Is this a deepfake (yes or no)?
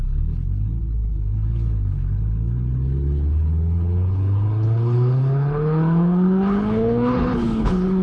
yes